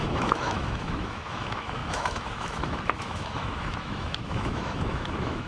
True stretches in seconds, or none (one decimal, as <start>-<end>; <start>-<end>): none

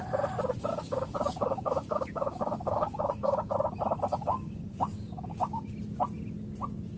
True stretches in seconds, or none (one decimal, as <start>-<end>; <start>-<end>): 0.0-0.7; 3.5-4.1; 5.7-7.0

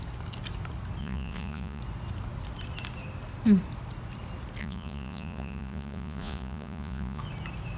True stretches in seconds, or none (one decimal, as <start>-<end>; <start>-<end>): 0.0-1.0; 1.8-4.6; 7.2-7.8

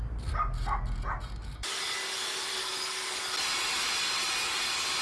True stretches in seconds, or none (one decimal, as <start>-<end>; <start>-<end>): 0.0-2.5; 3.2-5.0